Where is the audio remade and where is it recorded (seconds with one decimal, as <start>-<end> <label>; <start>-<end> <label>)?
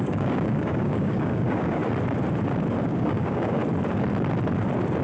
0.0-1.8 remade; 1.8-2.8 recorded; 2.8-3.6 remade; 3.6-5.0 recorded